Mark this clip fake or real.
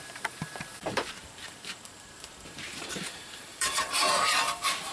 fake